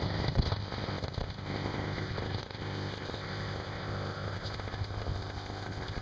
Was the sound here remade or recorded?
remade